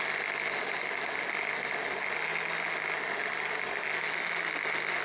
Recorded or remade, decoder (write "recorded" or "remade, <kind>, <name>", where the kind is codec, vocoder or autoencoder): recorded